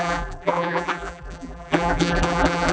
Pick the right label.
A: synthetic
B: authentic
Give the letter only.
A